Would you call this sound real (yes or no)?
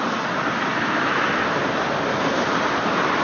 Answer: no